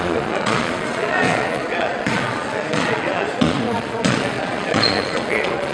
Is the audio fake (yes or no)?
yes